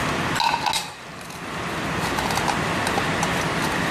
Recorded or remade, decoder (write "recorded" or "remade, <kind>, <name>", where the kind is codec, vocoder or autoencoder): recorded